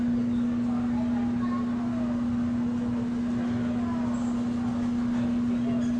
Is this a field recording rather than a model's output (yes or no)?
yes